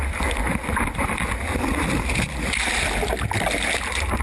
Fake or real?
real